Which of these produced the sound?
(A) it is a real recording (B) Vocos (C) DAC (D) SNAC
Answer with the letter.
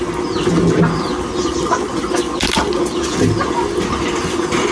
A